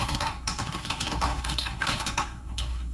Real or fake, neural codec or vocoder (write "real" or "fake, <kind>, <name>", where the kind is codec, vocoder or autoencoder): fake, codec, SNAC